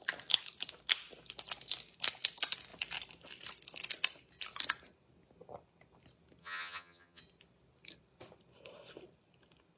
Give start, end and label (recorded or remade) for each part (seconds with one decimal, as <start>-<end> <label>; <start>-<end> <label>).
0.0-6.4 recorded; 6.4-7.2 remade; 7.2-9.8 recorded